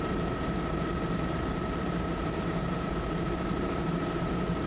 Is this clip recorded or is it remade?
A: remade